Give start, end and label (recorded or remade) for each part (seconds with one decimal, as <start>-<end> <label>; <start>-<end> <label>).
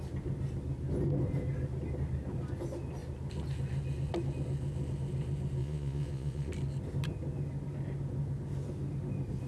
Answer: 0.0-5.6 recorded; 5.6-6.5 remade; 6.5-9.5 recorded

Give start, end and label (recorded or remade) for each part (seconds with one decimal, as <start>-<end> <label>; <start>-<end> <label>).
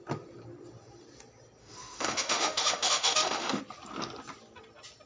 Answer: 0.0-1.6 recorded; 1.6-3.6 remade; 3.6-5.1 recorded